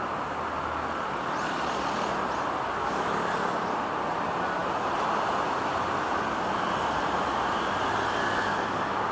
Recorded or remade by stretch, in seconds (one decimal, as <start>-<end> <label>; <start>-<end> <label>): 0.0-2.8 recorded; 2.8-3.3 remade; 3.3-8.2 recorded; 8.2-9.1 remade